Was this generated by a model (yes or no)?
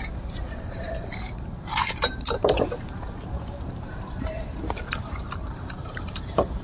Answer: yes